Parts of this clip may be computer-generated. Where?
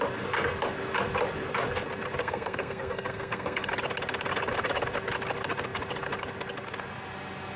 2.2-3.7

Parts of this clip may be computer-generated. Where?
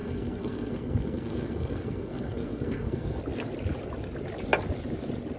0.0-3.2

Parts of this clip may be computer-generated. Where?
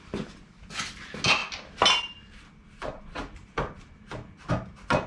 none